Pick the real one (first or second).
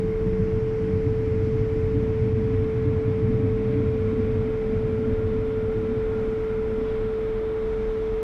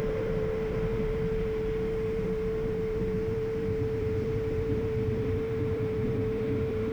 first